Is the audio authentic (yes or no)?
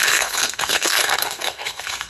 no